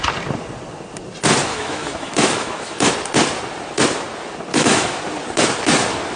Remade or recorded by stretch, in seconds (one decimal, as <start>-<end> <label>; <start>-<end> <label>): 0.0-1.5 recorded; 1.5-2.9 remade; 2.9-4.5 recorded; 4.5-5.0 remade; 5.0-6.2 recorded